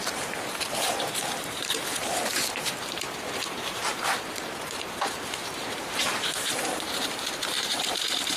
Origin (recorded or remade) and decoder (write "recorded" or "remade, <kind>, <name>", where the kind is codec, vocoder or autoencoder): remade, vocoder, BigVGAN v2